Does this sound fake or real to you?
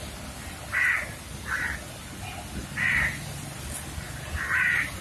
real